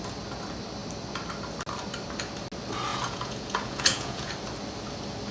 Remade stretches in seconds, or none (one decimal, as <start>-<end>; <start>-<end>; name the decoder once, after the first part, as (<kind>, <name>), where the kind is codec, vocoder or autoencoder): 2.9-4.3 (vocoder, Vocos)